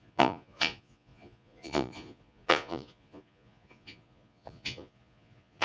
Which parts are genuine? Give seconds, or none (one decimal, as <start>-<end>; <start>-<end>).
none